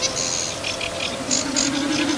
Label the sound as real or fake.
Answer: real